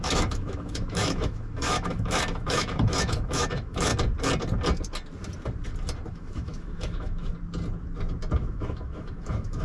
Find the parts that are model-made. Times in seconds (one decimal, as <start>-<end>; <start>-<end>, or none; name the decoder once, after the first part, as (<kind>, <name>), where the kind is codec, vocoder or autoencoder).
0.0-3.9 (autoencoder, DAC-VAE); 6.1-7.3; 8.4-9.6